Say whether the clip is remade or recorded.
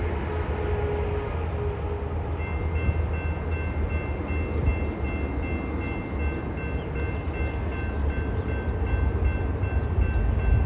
recorded